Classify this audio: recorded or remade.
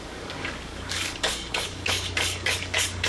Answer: remade